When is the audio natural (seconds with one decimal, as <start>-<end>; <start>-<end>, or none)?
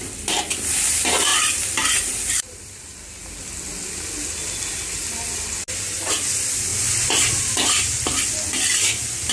0.0-1.3; 2.8-9.3